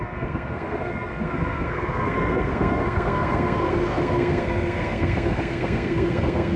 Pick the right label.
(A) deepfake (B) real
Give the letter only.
A